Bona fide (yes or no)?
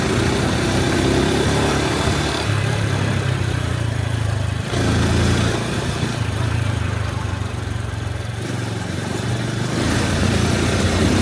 no